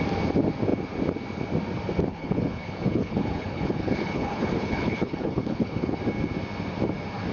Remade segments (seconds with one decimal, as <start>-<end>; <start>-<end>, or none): 2.1-6.0